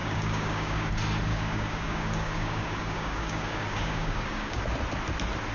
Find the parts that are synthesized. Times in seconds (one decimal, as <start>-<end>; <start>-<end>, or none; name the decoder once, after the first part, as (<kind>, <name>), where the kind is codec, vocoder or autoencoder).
0.0-0.9 (codec, DAC); 1.3-4.6